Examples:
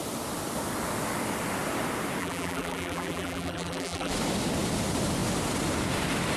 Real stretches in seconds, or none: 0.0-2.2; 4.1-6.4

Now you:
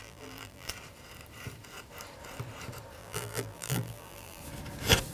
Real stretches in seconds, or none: 0.7-3.0; 4.4-5.1

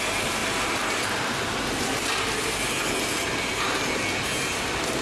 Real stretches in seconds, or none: 0.0-5.0

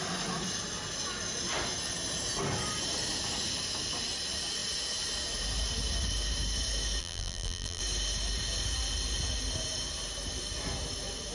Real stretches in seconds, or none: 0.0-7.0; 7.8-11.3

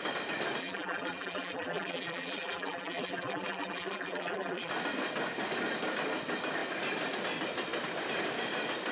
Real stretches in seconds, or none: 0.0-0.6; 4.7-8.9

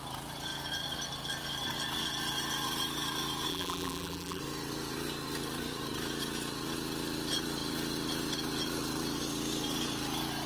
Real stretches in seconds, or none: 0.0-3.5; 4.4-10.5

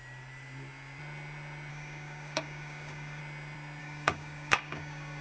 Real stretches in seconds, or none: 0.0-1.7; 3.2-3.8

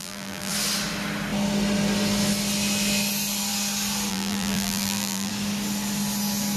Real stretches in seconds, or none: 0.5-4.1; 5.3-6.6